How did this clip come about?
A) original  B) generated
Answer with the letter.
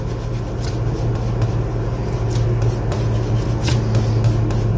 A